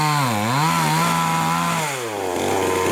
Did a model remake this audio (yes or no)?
no